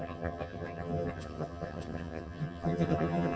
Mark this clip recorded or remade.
remade